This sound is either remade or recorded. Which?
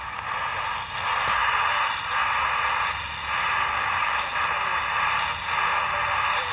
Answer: recorded